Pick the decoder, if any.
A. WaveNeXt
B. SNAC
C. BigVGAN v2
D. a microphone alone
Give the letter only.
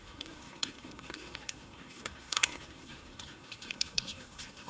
B